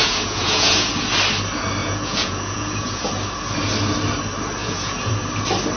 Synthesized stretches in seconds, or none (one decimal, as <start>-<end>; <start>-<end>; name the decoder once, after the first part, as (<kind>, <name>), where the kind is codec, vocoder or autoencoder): 0.0-0.9 (vocoder, Vocos); 1.8-3.1; 4.6-5.1

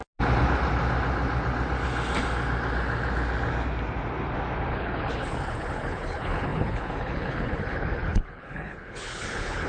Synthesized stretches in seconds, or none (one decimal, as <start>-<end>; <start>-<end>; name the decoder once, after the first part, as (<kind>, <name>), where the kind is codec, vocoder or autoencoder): 4.7-9.7 (codec, HILCodec)

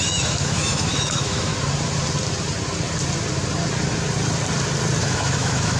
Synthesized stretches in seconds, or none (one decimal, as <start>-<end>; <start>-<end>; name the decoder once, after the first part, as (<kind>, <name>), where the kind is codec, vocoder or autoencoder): 0.0-1.5 (autoencoder, DAC-VAE); 5.0-5.8

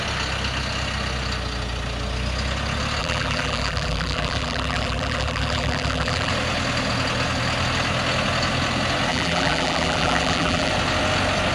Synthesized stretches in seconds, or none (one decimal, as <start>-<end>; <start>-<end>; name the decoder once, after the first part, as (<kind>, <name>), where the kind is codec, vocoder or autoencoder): 3.0-6.3 (vocoder, BigVGAN v2); 9.1-10.7

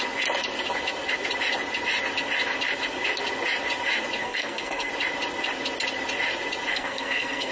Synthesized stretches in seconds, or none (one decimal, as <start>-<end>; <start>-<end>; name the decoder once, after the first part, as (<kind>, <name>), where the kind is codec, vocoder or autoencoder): 4.2-4.9 (codec, SNAC); 6.7-7.5

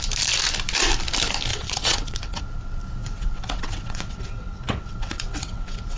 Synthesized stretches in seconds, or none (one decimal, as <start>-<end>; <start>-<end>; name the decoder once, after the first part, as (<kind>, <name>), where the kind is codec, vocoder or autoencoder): 1.5-2.4 (vocoder, WaveNeXt); 3.0-6.0

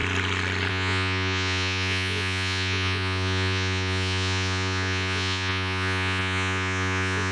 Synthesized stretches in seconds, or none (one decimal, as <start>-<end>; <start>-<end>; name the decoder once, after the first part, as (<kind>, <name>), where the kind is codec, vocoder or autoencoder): 0.7-7.3 (vocoder, Vocos)

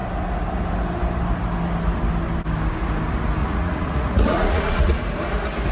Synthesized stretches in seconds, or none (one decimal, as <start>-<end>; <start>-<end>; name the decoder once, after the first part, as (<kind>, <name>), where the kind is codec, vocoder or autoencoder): 3.4-5.0 (vocoder, Vocos)